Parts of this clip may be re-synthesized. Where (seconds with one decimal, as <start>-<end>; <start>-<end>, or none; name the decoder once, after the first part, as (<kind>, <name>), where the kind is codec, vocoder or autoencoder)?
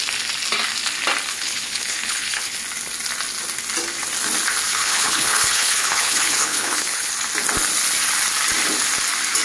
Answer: 1.3-2.6 (codec, HILCodec); 4.7-7.1